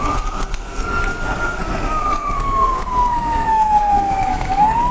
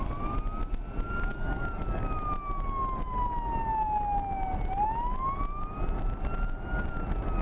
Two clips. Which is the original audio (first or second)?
second